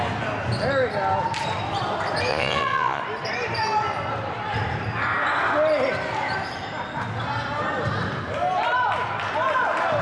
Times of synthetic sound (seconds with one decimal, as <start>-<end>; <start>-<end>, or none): 2.3-3.0